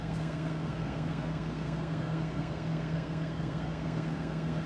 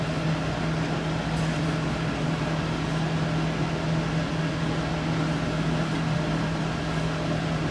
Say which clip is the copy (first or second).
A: first